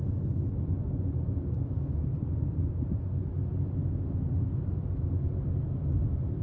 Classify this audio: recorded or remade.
recorded